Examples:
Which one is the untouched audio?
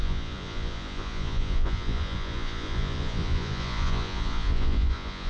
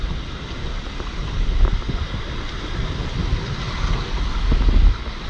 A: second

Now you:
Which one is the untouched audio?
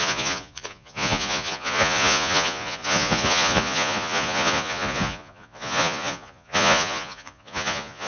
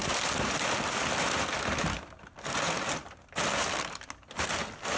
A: second